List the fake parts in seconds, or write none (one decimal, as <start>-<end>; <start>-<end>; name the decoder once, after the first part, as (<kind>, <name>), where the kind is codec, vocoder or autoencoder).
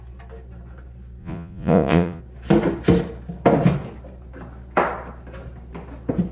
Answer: 1.2-2.2 (vocoder, Vocos)